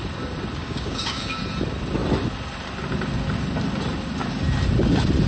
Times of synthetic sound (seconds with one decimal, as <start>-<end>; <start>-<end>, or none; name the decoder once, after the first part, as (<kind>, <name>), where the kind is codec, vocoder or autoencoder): 0.6-1.4 (codec, DAC)

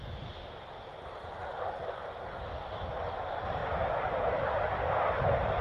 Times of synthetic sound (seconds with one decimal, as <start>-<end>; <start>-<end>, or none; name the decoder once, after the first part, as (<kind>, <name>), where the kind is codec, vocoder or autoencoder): none

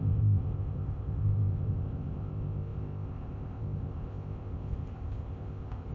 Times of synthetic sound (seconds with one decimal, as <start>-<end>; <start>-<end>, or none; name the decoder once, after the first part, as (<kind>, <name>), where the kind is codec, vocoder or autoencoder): 0.0-5.9 (codec, ZipCodec)